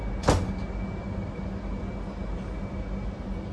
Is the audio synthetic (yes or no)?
no